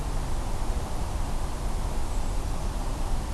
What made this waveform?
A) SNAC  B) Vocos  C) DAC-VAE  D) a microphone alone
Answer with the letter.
D